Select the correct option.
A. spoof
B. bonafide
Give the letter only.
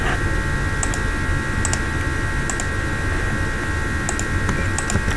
B